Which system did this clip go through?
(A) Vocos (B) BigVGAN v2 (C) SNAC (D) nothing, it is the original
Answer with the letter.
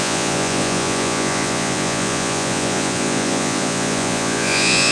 A